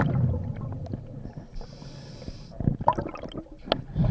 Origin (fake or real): real